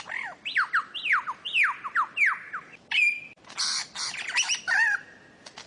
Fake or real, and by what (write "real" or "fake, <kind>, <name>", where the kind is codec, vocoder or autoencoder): fake, vocoder, BigVGAN v2